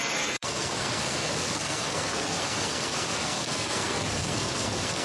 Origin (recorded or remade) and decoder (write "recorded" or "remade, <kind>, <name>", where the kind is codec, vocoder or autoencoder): remade, codec, SNAC